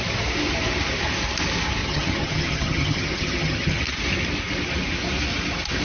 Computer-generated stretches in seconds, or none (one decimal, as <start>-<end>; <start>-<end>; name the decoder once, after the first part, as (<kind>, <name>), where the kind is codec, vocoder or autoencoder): 1.8-3.8 (vocoder, HiFi-GAN)